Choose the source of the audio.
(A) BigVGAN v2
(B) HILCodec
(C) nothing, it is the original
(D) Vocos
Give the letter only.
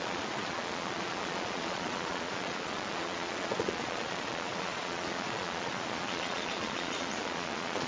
D